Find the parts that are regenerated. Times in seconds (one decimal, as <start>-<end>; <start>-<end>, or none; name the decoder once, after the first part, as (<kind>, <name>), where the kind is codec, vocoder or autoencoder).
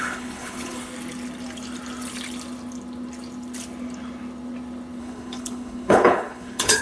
0.0-0.9 (codec, HILCodec); 5.0-6.8